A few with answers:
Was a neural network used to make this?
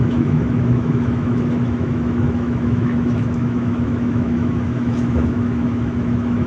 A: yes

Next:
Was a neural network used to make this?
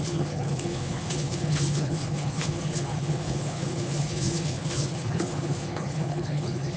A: yes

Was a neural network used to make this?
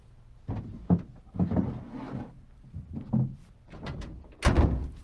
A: no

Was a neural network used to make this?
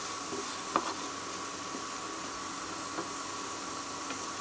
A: no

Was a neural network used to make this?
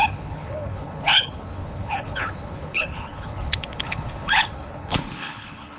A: yes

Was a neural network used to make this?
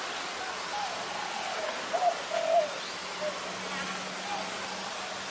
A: no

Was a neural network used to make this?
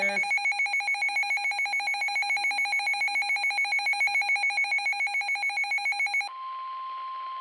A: no